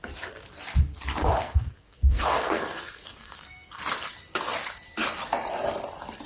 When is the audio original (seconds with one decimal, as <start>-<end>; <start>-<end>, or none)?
0.0-1.4; 3.8-6.3